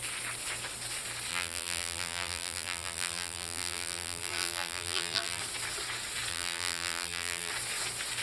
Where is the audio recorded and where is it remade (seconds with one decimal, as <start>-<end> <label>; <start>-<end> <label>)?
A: 0.0-1.3 recorded; 1.3-5.4 remade; 5.4-6.3 recorded; 6.3-7.5 remade; 7.5-8.2 recorded